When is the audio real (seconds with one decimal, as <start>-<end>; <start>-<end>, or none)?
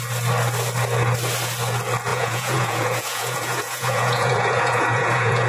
0.0-2.1